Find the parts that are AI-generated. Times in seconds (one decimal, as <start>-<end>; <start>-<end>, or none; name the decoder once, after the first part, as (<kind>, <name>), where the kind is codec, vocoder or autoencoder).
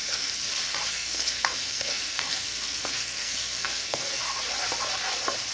0.0-0.5 (codec, SNAC); 0.9-4.2